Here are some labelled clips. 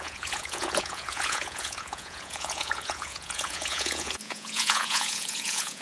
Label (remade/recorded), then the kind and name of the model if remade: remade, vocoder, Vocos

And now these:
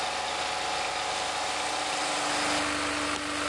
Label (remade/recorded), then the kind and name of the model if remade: recorded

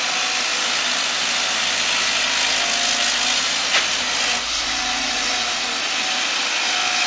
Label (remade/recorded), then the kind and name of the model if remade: recorded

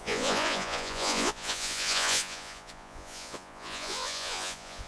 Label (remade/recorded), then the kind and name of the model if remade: remade, vocoder, Vocos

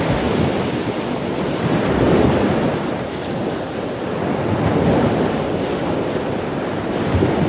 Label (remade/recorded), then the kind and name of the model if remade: recorded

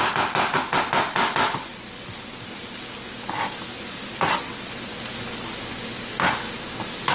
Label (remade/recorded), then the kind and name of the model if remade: recorded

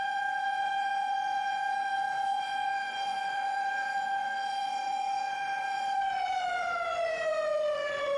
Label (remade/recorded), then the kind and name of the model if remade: remade, vocoder, Vocos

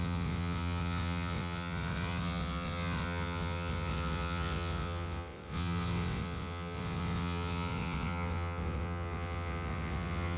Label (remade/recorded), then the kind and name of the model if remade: remade, vocoder, WaveNeXt